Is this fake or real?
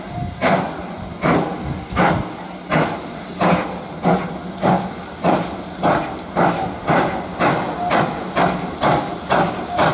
real